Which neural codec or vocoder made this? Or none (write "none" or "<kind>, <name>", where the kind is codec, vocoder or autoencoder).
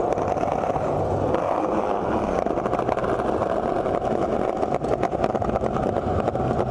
none